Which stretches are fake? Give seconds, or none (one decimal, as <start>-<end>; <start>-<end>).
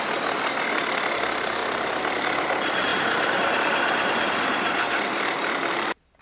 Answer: 1.6-2.1; 2.9-6.2